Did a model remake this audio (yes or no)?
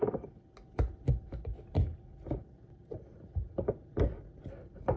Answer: no